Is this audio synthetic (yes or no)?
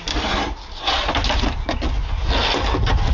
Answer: no